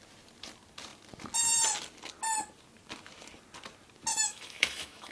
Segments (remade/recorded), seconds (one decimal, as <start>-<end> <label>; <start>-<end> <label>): 0.0-4.1 recorded; 4.1-5.1 remade